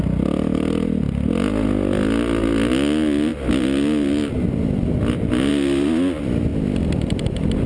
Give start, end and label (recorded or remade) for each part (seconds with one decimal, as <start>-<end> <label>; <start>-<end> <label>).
0.0-7.7 recorded